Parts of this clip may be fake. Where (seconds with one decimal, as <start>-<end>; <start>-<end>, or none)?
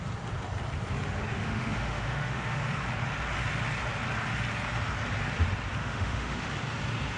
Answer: 1.3-2.6; 5.8-6.5